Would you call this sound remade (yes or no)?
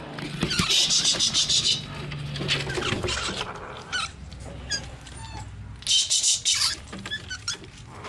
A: no